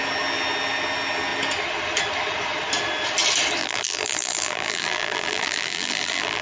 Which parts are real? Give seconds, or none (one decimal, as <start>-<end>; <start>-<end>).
0.0-3.6